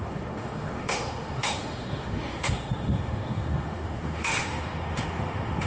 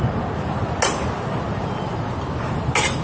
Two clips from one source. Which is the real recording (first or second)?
second